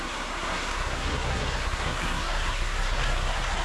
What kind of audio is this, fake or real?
fake